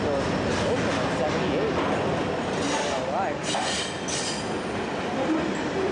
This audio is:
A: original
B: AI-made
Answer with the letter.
A